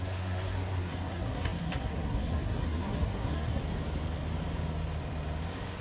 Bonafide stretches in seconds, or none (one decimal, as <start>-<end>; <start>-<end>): 3.6-5.8